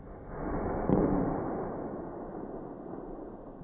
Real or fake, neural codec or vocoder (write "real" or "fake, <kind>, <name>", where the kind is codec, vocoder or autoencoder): real